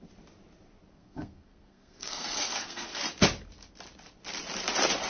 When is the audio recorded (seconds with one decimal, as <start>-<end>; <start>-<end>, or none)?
0.0-0.9; 3.0-5.1